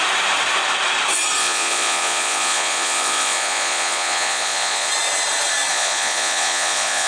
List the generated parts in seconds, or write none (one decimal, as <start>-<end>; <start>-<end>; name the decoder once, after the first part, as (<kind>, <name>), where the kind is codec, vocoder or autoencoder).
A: 1.4-4.9 (vocoder, Vocos); 5.7-7.1